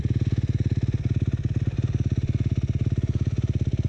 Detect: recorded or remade recorded